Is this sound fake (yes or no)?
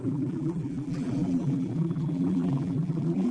yes